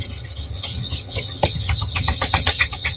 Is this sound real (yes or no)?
no